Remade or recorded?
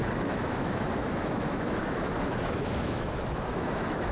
remade